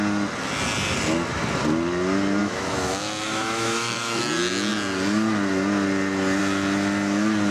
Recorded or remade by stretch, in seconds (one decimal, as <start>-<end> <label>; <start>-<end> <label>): 0.0-2.4 recorded; 2.4-4.2 remade; 4.2-7.5 recorded

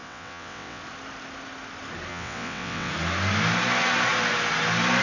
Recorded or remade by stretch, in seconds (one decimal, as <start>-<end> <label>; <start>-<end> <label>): 0.0-0.8 remade; 0.8-2.1 recorded; 2.1-2.9 remade; 2.9-5.0 recorded